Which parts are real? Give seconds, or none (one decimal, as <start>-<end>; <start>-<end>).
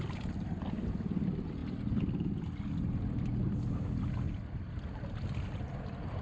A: 0.0-6.2